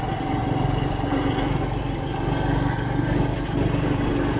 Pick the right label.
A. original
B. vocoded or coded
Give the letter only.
A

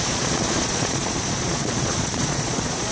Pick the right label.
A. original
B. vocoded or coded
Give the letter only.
B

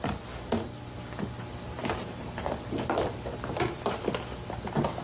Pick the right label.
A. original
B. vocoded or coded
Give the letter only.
A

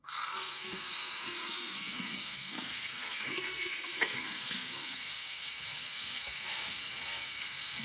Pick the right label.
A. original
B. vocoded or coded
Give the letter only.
B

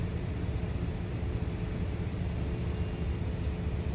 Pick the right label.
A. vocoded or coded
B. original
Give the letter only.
B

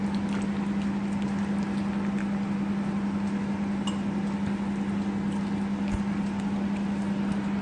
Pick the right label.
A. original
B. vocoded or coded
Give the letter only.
A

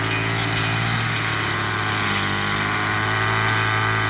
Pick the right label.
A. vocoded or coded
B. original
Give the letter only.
B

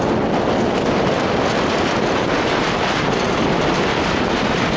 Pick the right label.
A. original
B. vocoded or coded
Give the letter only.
A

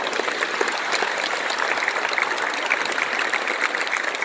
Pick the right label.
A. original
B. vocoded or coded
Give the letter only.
A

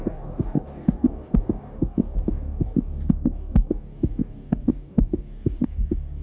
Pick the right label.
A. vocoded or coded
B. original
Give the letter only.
A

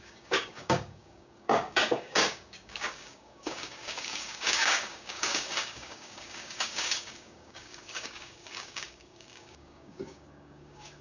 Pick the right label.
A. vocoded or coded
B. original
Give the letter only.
A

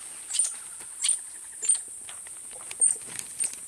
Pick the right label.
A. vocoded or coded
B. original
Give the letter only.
B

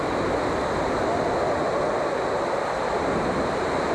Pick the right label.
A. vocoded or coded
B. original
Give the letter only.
B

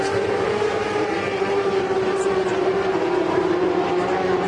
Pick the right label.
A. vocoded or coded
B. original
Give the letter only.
A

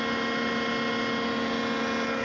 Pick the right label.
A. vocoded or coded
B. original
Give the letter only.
B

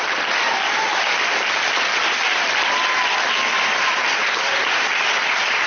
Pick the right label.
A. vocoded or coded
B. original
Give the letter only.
B